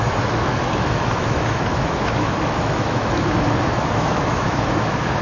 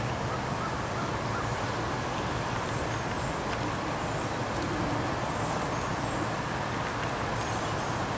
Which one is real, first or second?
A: second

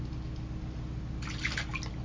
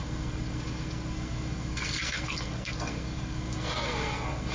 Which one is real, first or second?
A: first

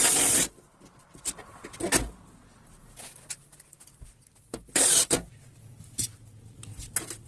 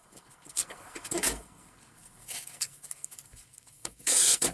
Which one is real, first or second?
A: first